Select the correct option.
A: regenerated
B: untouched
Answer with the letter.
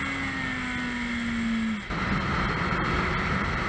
B